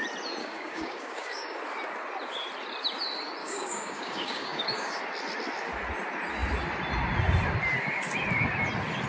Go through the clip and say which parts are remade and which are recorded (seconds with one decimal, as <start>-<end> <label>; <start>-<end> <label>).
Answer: 0.0-0.4 recorded; 0.4-1.6 remade; 1.6-3.4 recorded; 3.4-5.0 remade; 5.0-9.1 recorded